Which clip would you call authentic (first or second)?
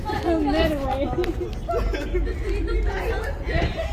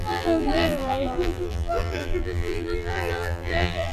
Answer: first